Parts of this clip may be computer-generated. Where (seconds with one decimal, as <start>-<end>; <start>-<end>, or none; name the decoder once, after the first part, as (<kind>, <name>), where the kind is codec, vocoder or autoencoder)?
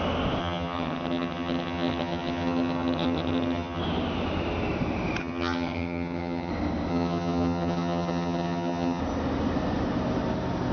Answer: 0.4-3.8 (vocoder, HiFi-GAN); 5.2-6.5; 6.9-9.0